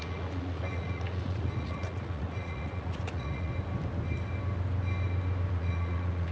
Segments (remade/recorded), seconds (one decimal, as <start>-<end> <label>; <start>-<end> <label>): 0.0-3.5 remade; 3.5-5.5 recorded; 5.5-6.3 remade